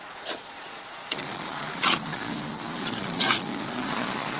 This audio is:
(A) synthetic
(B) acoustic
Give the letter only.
A